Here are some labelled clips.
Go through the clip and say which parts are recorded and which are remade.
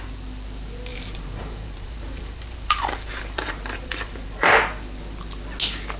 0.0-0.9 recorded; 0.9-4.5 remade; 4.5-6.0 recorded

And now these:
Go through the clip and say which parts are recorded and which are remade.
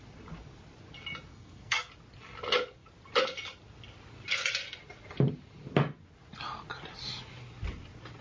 0.0-1.3 recorded; 1.3-1.9 remade; 1.9-8.2 recorded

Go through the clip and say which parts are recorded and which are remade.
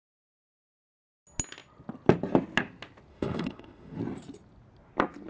0.0-3.1 recorded; 3.1-4.0 remade; 4.0-5.3 recorded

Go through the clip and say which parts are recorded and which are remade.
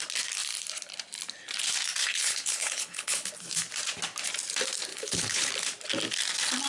0.0-2.0 recorded; 2.0-3.3 remade; 3.3-4.9 recorded; 4.9-5.5 remade; 5.5-6.7 recorded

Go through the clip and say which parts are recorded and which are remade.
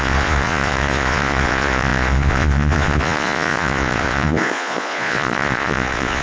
0.0-6.2 remade